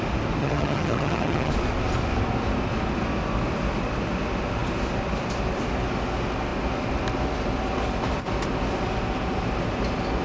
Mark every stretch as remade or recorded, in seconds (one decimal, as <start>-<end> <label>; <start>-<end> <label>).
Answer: 0.0-0.4 recorded; 0.4-1.5 remade; 1.5-10.2 recorded